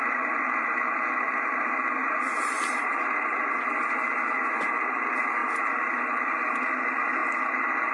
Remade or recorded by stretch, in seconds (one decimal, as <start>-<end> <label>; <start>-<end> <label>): 0.0-2.0 recorded; 2.0-3.4 remade; 3.4-5.4 recorded; 5.4-6.8 remade; 6.8-7.9 recorded